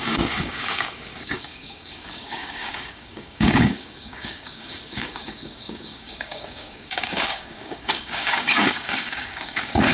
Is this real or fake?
fake